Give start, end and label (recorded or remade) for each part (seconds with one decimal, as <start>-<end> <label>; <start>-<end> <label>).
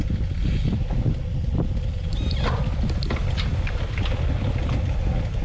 0.0-5.4 recorded